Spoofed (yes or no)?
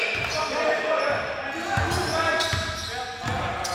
no